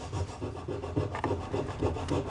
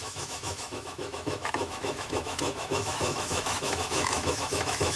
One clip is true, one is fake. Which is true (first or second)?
first